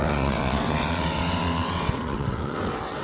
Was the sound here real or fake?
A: fake